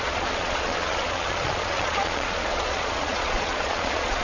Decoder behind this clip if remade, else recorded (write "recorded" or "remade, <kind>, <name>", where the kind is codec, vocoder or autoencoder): remade, vocoder, Vocos